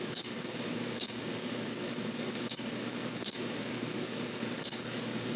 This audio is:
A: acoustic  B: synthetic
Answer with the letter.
B